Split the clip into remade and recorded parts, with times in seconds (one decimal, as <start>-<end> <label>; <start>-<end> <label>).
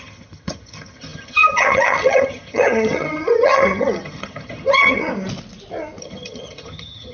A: 0.0-5.1 remade; 5.1-6.0 recorded; 6.0-7.1 remade